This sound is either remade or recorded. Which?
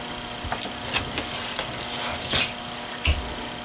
recorded